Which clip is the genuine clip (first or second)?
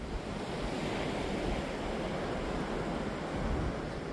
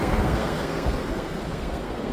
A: first